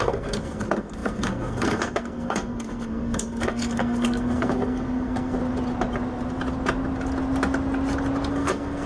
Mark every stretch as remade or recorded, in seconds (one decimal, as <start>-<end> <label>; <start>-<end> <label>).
0.0-5.4 remade; 5.4-8.3 recorded; 8.3-8.9 remade